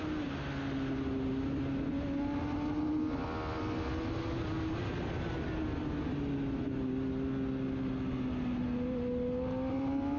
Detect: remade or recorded recorded